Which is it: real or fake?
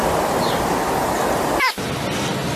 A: real